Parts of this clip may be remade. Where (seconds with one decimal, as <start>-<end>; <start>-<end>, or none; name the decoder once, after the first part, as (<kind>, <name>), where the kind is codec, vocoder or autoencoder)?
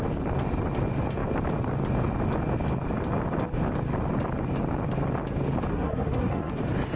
5.7-6.5 (codec, SNAC)